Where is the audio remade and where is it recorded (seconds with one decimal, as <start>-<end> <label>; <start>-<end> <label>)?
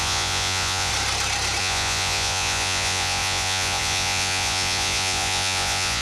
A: 0.0-0.9 remade; 0.9-1.6 recorded; 1.6-6.0 remade